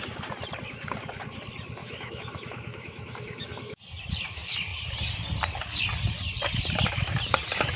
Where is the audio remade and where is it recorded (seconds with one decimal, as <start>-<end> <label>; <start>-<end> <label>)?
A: 0.0-1.8 recorded; 1.8-3.8 remade; 3.8-7.8 recorded

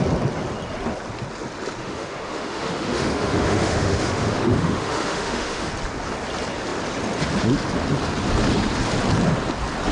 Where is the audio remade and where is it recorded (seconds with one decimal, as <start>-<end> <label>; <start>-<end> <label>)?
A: 0.0-1.8 recorded; 1.8-5.7 remade; 5.7-9.9 recorded

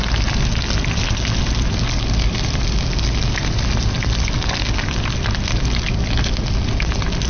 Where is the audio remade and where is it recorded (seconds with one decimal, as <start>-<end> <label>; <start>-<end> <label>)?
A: 0.0-7.3 recorded